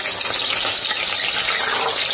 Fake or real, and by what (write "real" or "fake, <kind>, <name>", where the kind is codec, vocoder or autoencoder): real